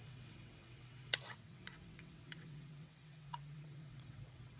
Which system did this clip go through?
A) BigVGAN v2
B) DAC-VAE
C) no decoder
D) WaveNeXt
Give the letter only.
D